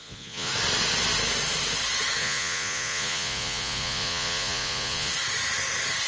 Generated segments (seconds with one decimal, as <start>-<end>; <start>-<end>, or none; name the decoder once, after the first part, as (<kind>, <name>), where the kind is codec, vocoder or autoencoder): 0.0-0.5 (vocoder, Vocos); 2.2-5.1